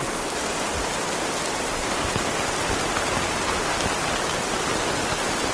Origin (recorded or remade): recorded